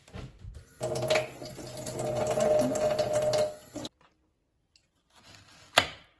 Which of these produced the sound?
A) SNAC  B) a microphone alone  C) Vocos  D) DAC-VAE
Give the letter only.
B